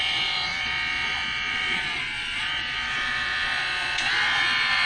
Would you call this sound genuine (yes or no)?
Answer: no